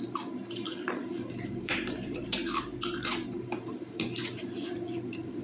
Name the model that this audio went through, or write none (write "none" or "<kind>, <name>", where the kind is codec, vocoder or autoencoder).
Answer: vocoder, BigVGAN v2